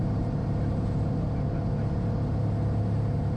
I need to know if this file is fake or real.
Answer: real